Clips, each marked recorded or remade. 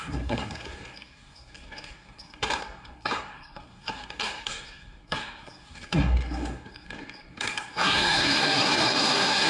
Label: remade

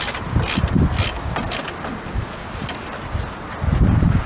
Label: recorded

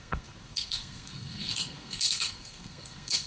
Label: remade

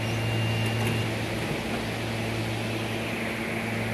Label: recorded